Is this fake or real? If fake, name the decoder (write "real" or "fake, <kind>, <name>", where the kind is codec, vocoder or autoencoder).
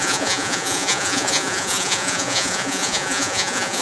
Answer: fake, vocoder, Vocos